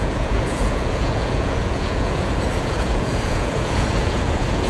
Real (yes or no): no